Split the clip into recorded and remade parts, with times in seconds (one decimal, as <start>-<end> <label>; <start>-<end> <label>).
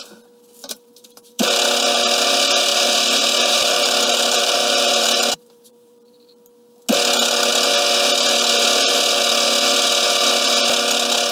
0.0-0.6 recorded; 0.6-1.6 remade; 1.6-2.7 recorded; 2.7-6.3 remade; 6.3-11.3 recorded